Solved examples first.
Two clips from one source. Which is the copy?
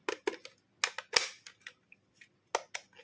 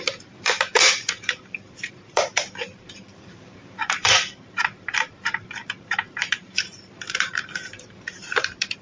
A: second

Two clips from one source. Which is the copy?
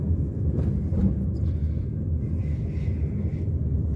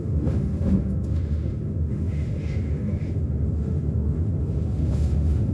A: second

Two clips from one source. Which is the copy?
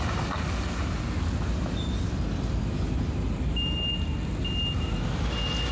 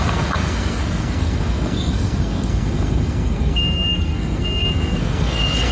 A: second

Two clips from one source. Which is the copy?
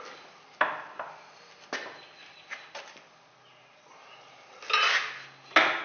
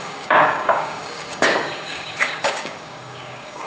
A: second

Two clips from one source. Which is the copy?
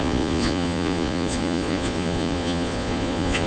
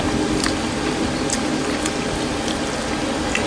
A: first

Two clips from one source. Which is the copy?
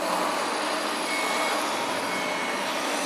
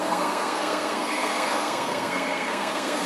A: second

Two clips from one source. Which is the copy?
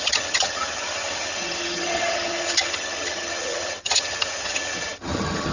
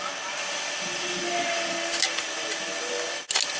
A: first